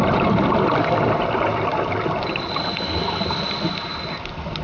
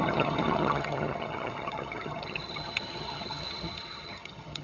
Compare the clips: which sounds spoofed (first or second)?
second